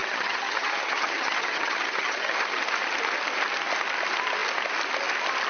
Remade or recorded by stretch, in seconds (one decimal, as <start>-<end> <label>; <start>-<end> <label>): 0.0-2.6 remade; 2.6-5.5 recorded